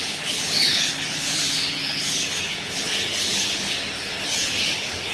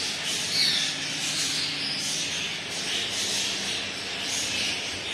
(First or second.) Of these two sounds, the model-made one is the first